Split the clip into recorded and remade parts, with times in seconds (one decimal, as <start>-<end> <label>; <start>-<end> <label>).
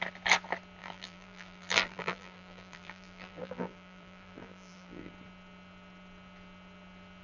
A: 0.0-0.8 recorded; 0.8-5.1 remade; 5.1-7.2 recorded